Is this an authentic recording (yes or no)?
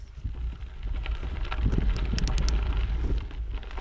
yes